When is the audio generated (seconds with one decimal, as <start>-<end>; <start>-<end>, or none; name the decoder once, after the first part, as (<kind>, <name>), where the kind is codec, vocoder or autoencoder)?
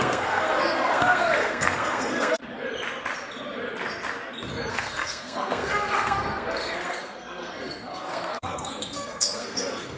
0.0-2.4 (codec, SNAC); 4.7-10.0